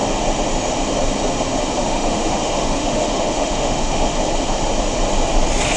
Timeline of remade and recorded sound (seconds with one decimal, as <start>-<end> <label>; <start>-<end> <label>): 0.0-1.8 recorded; 1.8-4.2 remade; 4.2-5.8 recorded